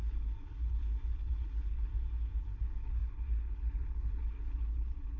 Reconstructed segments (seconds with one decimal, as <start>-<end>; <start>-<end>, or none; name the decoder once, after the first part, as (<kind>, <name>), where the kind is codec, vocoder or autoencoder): 0.0-1.9 (codec, HILCodec); 2.4-5.2